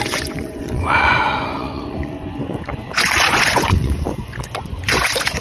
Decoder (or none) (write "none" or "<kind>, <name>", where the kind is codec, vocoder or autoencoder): vocoder, Vocos